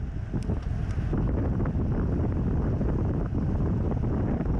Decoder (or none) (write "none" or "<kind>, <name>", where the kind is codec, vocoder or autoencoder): none